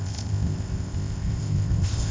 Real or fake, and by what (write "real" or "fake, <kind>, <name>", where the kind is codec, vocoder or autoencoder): fake, codec, ZipCodec